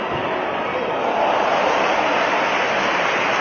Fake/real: real